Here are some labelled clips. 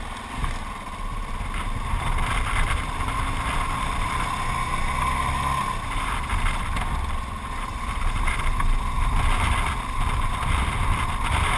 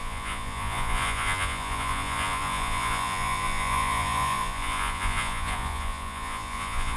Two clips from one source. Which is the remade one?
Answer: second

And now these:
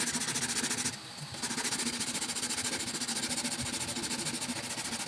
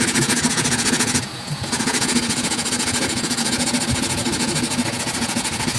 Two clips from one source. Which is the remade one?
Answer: second